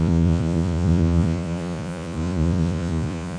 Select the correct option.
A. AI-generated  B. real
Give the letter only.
A